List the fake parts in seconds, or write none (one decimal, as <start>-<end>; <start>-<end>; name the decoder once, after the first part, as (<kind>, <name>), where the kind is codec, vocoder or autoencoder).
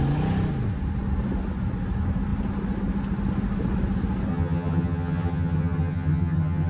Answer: 4.3-6.7 (vocoder, HiFi-GAN)